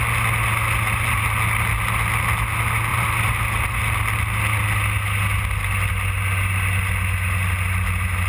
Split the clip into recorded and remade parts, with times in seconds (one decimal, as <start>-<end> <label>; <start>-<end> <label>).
0.0-2.9 recorded; 2.9-3.8 remade; 3.8-8.3 recorded